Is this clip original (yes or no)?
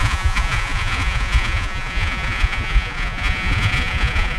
no